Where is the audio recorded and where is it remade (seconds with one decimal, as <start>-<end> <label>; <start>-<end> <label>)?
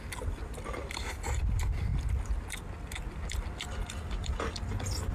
0.0-5.1 recorded